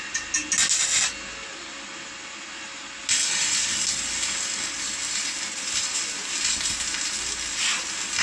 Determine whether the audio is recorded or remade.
recorded